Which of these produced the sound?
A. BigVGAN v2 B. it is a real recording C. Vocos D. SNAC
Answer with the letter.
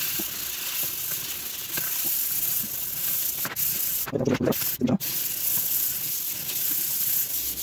B